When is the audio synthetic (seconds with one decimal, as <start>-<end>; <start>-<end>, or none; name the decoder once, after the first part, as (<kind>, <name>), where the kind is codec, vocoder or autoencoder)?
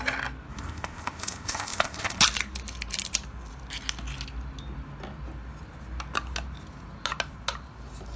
0.5-2.2 (codec, ZipCodec)